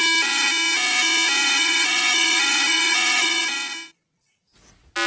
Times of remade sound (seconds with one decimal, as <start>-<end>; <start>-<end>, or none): 1.4-3.4